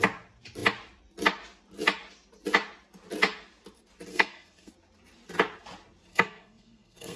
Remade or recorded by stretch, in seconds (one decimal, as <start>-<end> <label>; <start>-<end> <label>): 0.0-4.1 recorded; 4.1-4.7 remade; 4.7-6.1 recorded; 6.1-7.2 remade